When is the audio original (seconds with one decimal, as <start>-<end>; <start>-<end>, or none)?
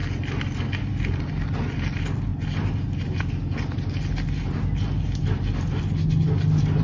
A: 0.0-6.8